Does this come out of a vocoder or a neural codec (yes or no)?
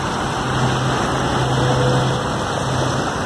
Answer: no